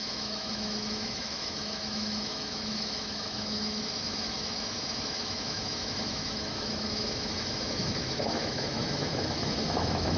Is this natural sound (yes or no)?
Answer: no